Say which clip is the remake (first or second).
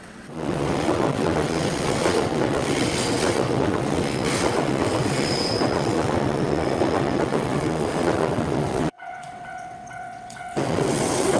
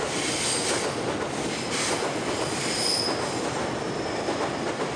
first